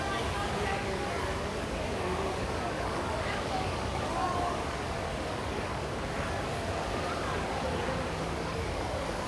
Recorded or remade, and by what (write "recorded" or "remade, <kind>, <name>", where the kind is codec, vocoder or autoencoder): remade, codec, DAC